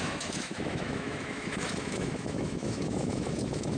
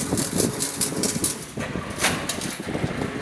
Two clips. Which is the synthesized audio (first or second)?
first